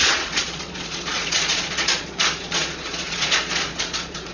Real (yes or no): no